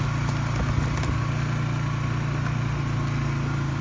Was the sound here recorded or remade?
recorded